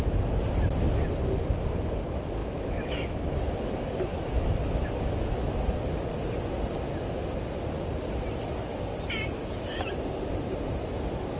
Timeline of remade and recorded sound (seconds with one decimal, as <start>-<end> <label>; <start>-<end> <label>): 0.0-2.4 recorded; 2.4-5.7 remade; 5.7-11.4 recorded